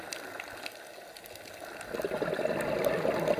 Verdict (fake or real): real